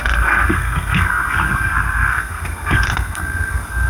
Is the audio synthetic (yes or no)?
yes